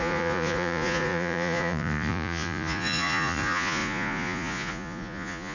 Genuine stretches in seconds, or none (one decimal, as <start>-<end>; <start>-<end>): none